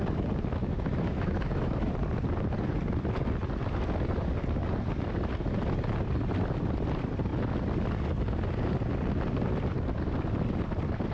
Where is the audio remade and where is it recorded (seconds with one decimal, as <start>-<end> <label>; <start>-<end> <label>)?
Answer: 0.0-0.6 recorded; 0.6-1.9 remade; 1.9-11.1 recorded